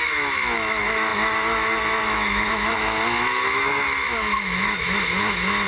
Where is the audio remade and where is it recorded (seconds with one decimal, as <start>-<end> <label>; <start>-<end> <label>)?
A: 0.0-5.7 remade